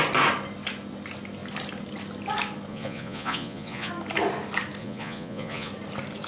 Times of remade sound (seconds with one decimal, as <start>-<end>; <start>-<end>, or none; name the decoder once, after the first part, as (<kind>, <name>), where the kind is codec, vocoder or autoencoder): 2.7-3.9 (vocoder, Vocos); 4.8-5.7